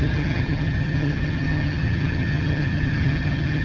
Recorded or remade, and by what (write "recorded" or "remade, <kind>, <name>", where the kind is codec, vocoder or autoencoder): remade, vocoder, HiFi-GAN